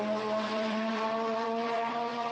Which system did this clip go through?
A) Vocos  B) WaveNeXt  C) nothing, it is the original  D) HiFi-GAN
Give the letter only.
B